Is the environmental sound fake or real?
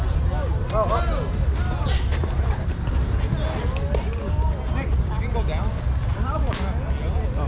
real